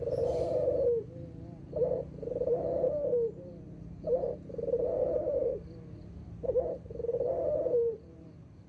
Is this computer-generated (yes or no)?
yes